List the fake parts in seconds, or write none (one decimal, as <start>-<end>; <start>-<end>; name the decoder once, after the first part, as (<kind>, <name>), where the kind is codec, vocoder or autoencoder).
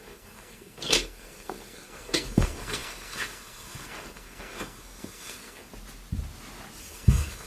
0.0-5.7 (codec, SNAC); 6.8-7.5